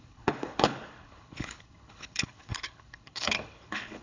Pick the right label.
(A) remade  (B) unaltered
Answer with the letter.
A